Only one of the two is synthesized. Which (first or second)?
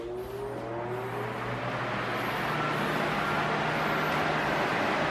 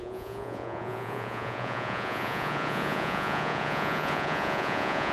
second